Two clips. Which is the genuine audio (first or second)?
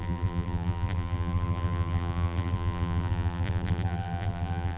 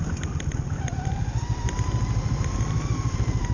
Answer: second